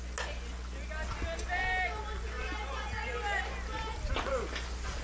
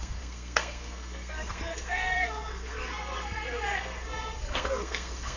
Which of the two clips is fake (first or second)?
second